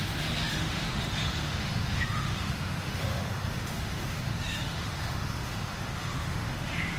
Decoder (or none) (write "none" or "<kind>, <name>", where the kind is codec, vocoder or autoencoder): autoencoder, DAC-VAE